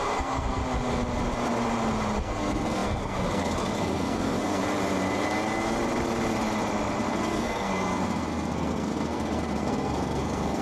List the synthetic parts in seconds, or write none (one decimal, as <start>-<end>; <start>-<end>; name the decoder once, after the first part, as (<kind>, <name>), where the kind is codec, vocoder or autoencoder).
0.0-0.6 (codec, SNAC); 2.2-4.6; 7.1-10.6